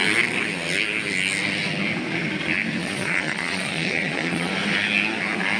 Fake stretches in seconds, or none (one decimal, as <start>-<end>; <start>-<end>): 2.8-4.5